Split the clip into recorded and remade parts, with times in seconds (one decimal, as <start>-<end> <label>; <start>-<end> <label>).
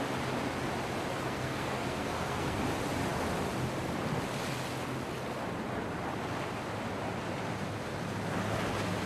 0.0-1.1 recorded; 1.1-2.6 remade; 2.6-9.1 recorded